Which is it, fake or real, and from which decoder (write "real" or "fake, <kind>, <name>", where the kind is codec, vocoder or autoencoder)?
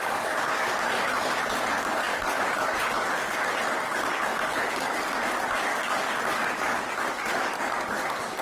fake, codec, DAC